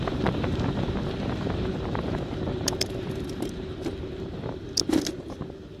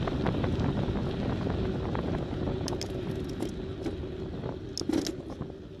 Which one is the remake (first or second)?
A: first